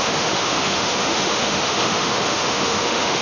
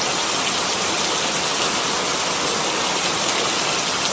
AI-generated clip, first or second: first